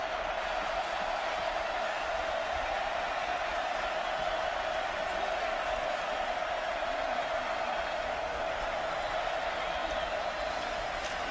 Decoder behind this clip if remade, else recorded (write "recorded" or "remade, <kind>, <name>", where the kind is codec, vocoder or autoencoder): recorded